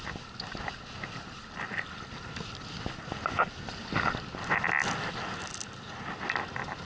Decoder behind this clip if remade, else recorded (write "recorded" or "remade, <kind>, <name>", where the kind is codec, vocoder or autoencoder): recorded